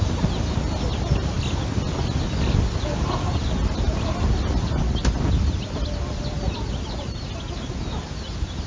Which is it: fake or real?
real